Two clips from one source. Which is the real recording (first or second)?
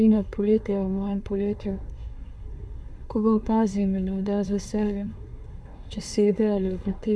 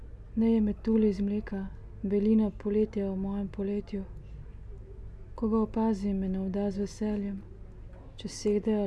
second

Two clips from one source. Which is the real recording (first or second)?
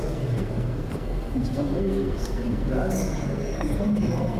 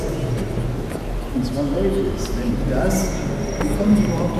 second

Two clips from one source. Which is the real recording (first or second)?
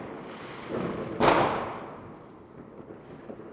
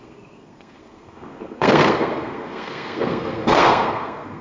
first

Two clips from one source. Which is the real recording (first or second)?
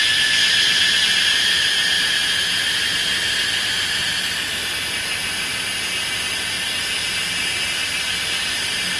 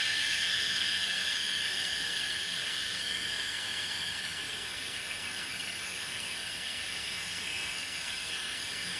first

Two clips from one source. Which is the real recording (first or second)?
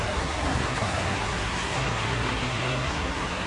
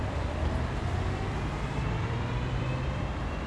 second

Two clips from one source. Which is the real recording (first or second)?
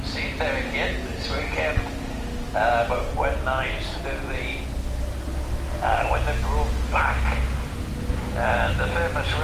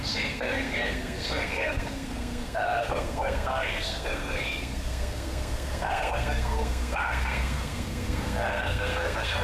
first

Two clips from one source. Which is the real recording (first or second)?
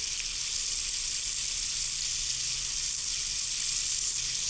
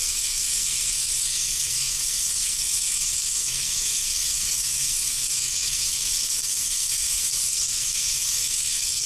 first